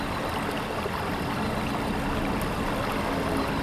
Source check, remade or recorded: recorded